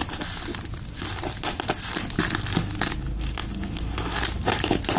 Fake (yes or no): no